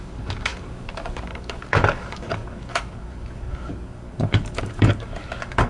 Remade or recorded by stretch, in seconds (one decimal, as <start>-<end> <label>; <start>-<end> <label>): 0.0-5.7 remade